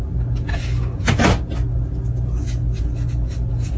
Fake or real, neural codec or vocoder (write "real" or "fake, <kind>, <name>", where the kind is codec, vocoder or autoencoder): real